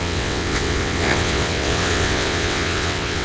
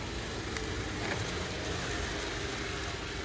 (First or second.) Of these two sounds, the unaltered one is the second